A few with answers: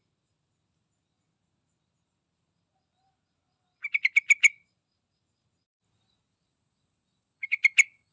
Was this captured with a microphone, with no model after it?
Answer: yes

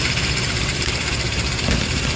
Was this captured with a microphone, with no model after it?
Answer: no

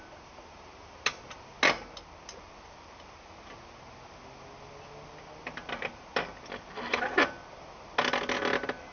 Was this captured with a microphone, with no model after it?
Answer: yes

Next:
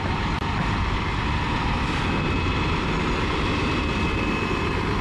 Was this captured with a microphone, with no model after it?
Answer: yes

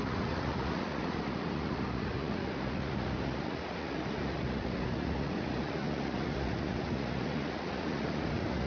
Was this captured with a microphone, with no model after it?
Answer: no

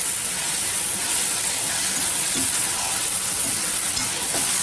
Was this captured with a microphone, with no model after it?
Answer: no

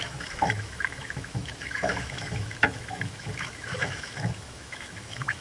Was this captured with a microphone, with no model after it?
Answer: no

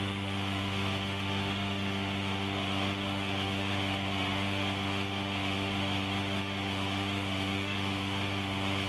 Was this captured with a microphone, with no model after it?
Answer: no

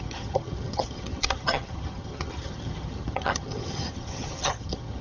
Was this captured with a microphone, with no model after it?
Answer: no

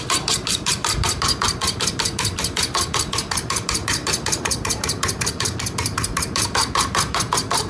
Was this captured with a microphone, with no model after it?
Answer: no